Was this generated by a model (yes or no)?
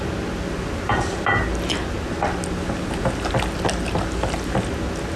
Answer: no